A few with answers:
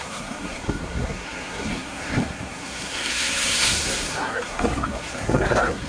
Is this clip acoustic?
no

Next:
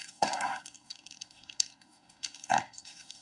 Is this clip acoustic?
no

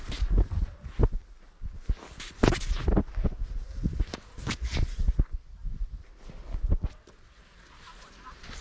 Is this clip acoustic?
yes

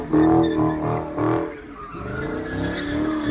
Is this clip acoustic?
yes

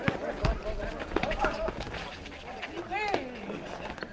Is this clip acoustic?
yes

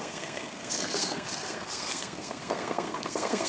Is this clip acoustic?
no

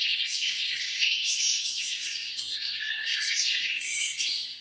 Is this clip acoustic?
no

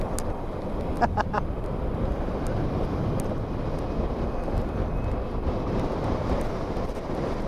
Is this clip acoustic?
yes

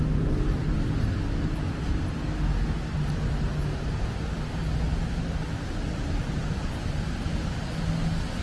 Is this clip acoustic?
yes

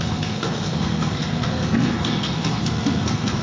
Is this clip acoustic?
no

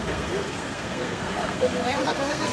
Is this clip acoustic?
no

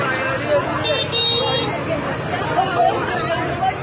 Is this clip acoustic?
yes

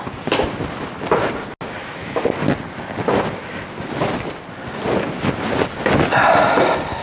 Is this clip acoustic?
yes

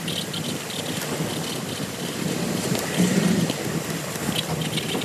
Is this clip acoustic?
yes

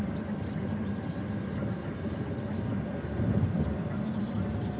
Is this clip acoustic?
yes